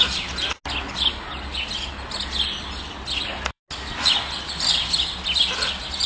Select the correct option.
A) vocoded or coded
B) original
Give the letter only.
B